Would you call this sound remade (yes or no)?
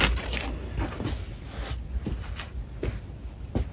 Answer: no